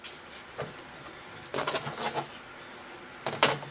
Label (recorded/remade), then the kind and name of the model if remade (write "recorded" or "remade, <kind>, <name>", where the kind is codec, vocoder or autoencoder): recorded